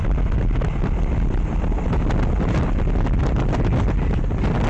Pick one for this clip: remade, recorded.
recorded